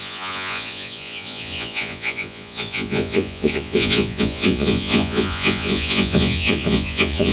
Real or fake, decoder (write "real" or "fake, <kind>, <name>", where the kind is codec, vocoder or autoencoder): fake, vocoder, Vocos